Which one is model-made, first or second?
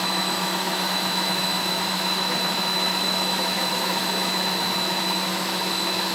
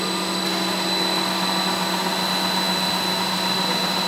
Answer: first